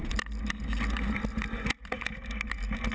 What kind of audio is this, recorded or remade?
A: recorded